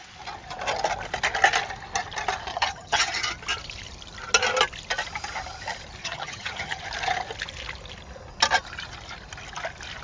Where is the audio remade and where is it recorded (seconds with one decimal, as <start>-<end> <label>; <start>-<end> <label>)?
0.0-2.5 recorded; 2.5-3.3 remade; 3.3-6.0 recorded; 6.0-6.8 remade; 6.8-10.0 recorded